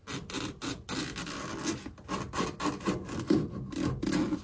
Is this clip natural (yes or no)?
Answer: yes